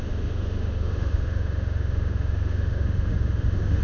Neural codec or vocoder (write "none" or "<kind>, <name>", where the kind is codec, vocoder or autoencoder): autoencoder, DAC-VAE